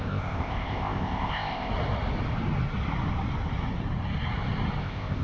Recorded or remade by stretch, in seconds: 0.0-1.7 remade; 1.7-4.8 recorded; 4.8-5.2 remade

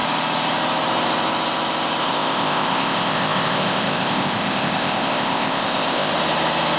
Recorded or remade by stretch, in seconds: 0.0-2.0 recorded; 2.0-6.1 remade; 6.1-6.8 recorded

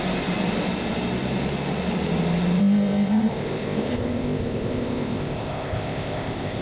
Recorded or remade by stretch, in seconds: 0.0-2.6 recorded; 2.6-6.6 remade

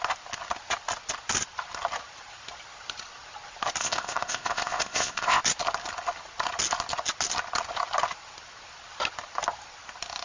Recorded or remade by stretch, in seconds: 0.0-3.8 recorded; 3.8-5.4 remade; 5.4-10.2 recorded